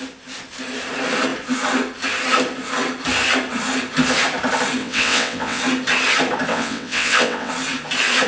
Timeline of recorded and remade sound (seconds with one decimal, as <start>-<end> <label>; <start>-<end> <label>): 0.0-4.8 recorded; 4.8-5.6 remade; 5.6-6.5 recorded; 6.5-7.5 remade; 7.5-8.3 recorded